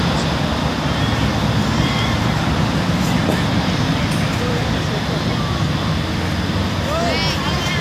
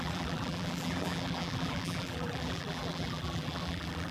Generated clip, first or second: second